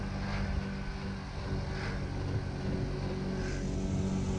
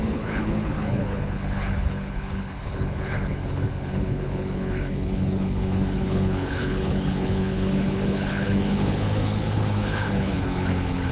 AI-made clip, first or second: second